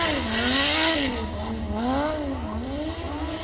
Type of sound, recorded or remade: recorded